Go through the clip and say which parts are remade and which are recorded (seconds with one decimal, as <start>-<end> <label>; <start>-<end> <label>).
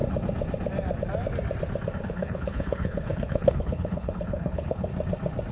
0.0-2.0 recorded; 2.0-4.9 remade; 4.9-5.5 recorded